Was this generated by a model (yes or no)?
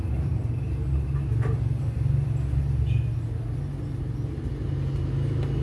no